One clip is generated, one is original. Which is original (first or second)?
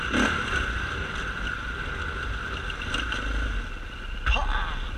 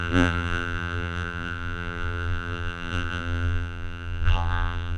first